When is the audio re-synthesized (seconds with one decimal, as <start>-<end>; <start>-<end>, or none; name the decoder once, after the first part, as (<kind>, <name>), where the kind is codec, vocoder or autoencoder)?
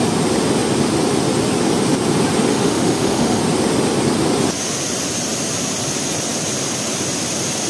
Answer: 2.5-3.4 (autoencoder, DAC-VAE)